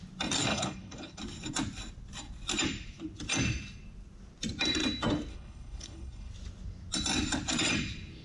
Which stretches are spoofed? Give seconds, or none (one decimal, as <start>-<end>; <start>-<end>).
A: 0.5-1.2; 5.3-6.3

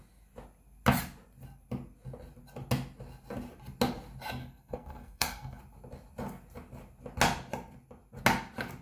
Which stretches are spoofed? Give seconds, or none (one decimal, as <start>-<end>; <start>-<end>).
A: 4.4-5.6

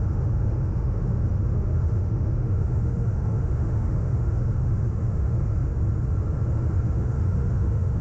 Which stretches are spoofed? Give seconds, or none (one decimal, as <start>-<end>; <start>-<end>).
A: 0.0-5.7; 6.8-8.0

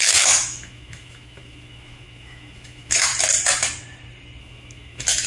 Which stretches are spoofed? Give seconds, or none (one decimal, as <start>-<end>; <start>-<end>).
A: 0.0-3.1; 4.4-5.3

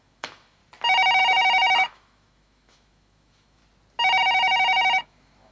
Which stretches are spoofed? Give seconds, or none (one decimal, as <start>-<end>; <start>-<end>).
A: 0.0-0.6; 1.2-3.6; 4.2-5.5

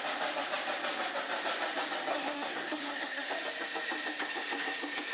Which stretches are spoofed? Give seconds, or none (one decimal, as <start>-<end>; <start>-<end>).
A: 2.1-3.3

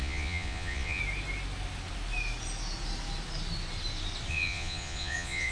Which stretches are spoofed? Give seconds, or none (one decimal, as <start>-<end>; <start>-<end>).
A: 0.0-1.0; 4.3-5.5

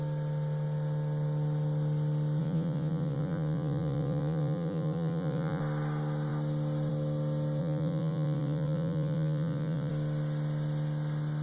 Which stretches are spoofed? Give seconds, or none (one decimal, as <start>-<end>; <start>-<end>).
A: 2.4-5.6; 7.6-9.9